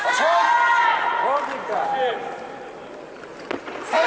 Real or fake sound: real